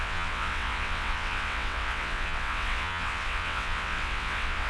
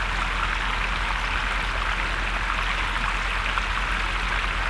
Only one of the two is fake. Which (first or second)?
first